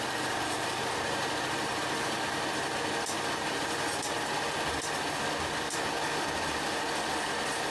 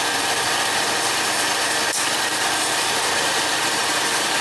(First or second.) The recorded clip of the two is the first